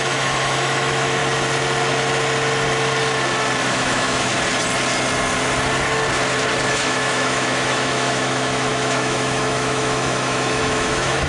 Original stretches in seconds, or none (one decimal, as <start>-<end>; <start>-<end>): 1.2-3.6; 4.3-6.7